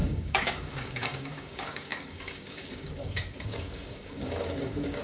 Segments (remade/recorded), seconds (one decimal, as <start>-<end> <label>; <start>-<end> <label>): 0.0-5.0 remade